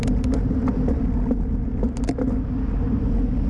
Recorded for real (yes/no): yes